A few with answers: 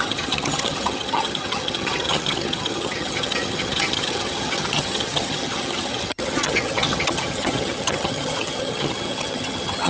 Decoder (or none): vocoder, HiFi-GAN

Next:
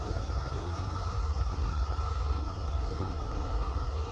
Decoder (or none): codec, SNAC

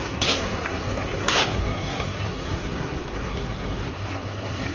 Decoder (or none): codec, SNAC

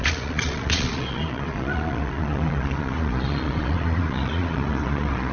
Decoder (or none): vocoder, Vocos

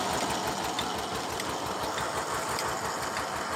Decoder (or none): none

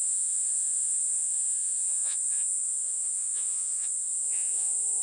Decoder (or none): vocoder, Vocos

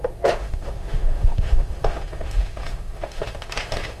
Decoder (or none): autoencoder, DAC-VAE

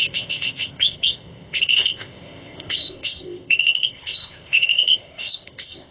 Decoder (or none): codec, ZipCodec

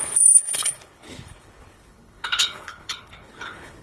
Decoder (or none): codec, HILCodec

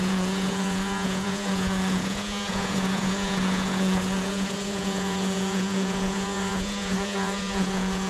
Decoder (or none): vocoder, Vocos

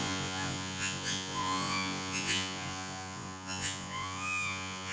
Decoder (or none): vocoder, Vocos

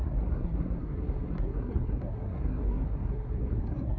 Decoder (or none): codec, SNAC